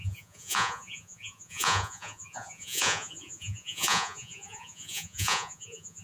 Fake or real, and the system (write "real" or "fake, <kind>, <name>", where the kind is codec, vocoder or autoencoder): fake, vocoder, Vocos